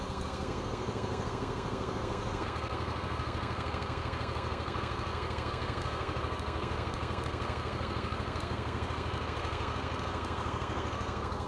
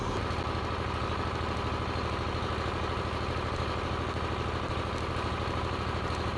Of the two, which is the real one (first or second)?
second